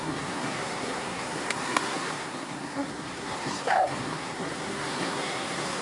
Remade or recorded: remade